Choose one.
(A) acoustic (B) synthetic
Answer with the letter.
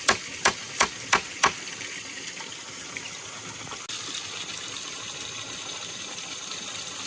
A